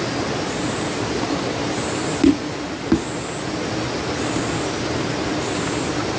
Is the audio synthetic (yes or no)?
no